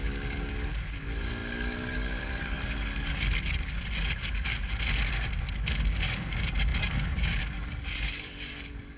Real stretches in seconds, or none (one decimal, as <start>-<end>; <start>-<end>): 4.5-5.4